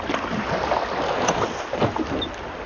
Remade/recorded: recorded